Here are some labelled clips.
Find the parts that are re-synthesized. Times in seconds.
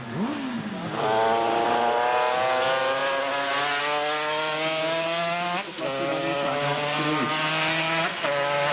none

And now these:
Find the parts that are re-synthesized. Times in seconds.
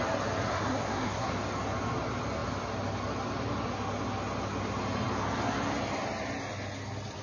0.5-1.3 (codec, SNAC)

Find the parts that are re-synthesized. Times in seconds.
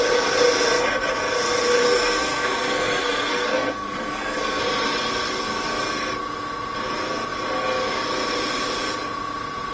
1.8-4.6 (codec, SNAC)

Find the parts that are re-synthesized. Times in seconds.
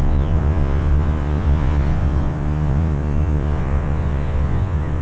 0.0-5.0 (vocoder, Vocos)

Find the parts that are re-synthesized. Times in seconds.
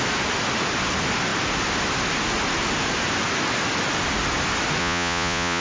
4.8-5.6 (vocoder, Vocos)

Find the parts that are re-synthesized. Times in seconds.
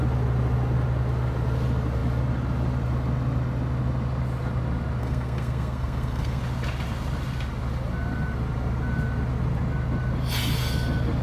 5.0-6.4 (codec, SNAC)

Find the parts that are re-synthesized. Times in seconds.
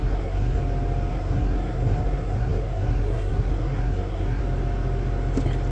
0.0-0.6 (codec, SNAC); 1.1-4.4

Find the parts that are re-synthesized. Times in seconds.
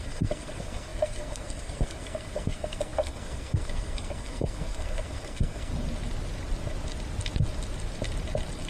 0.0-5.7 (codec, SNAC)